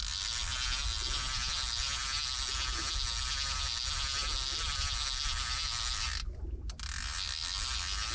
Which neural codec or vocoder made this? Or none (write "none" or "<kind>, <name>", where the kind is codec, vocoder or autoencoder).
none